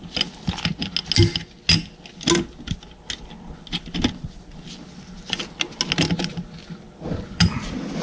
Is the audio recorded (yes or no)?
yes